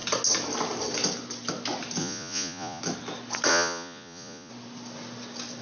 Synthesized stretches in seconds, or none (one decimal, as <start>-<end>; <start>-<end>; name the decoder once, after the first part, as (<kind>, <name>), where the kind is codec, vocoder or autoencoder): 2.0-2.8 (vocoder, Vocos); 3.5-4.5